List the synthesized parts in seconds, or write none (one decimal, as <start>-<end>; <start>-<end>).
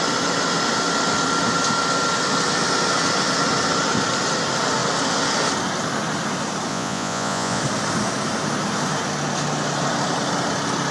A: 6.7-7.6